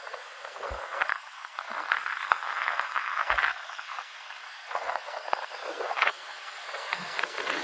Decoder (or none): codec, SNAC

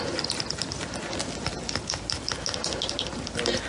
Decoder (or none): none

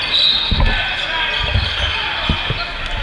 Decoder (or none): none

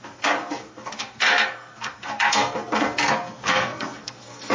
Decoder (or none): codec, SNAC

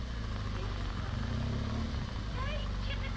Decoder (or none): none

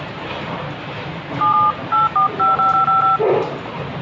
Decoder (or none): none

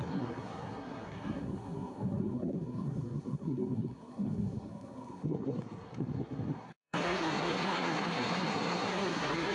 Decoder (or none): codec, SNAC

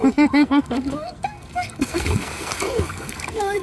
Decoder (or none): codec, SNAC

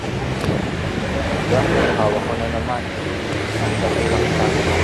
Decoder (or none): none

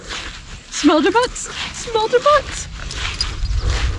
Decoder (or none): none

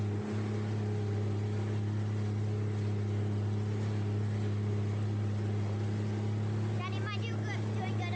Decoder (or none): none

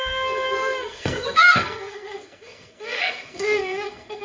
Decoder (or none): codec, SNAC